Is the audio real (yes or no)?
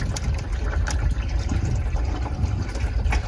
yes